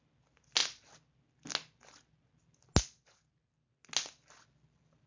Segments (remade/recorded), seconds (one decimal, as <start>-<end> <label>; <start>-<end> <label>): 0.0-5.1 recorded

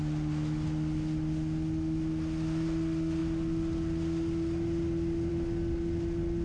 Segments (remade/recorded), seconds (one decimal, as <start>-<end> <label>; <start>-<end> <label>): 0.0-6.4 recorded

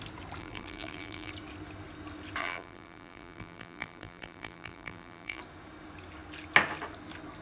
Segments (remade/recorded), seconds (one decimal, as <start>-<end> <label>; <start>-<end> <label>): 0.0-0.4 recorded; 0.4-1.3 remade; 1.3-2.4 recorded; 2.4-5.4 remade; 5.4-7.4 recorded

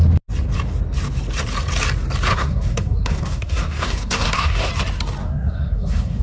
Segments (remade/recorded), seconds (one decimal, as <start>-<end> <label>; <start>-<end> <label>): 0.0-2.3 recorded; 2.3-4.7 remade; 4.7-5.2 recorded; 5.2-6.2 remade

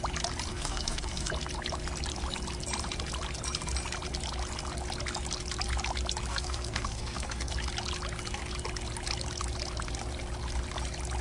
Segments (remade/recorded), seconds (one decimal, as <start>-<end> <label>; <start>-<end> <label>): 0.0-0.5 recorded; 0.5-1.3 remade; 1.3-6.3 recorded; 6.3-7.5 remade; 7.5-11.2 recorded

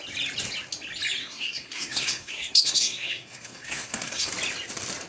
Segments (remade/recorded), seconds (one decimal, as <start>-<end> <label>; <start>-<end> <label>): 0.0-1.2 recorded; 1.2-4.3 remade; 4.3-5.1 recorded

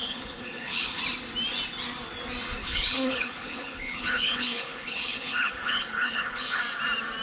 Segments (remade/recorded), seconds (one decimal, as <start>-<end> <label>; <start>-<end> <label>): 0.0-1.0 remade; 1.0-2.6 recorded; 2.6-6.6 remade; 6.6-7.2 recorded